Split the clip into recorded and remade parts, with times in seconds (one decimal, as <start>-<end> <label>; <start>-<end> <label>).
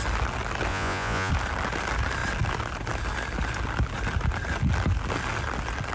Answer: 0.0-0.7 recorded; 0.7-1.3 remade; 1.3-5.9 recorded